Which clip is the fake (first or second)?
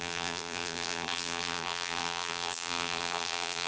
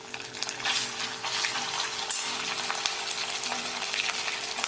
first